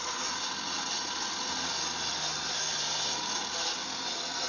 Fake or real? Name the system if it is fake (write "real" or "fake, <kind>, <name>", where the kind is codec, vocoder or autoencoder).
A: real